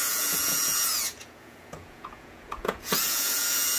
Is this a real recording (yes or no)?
no